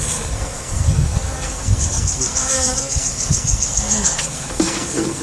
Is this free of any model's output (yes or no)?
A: no